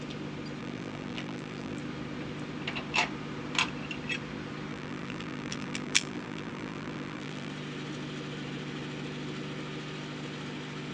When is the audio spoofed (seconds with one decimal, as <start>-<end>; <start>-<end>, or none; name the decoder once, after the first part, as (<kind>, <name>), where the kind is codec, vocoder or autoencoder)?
0.6-1.8 (vocoder, BigVGAN v2); 4.7-7.5